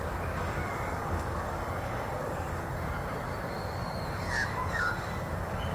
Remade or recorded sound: remade